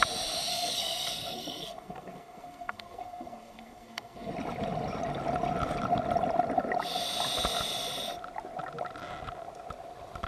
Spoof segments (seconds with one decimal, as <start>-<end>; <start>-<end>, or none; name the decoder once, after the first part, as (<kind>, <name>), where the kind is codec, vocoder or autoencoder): 0.5-4.3 (codec, SNAC)